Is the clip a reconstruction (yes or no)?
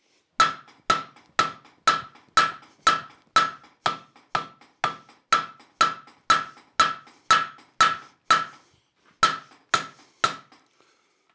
no